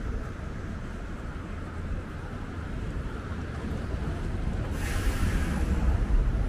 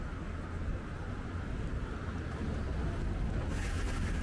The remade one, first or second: first